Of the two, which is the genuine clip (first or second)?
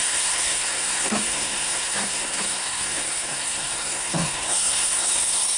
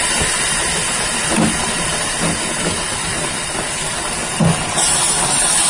second